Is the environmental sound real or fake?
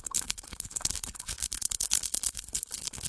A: fake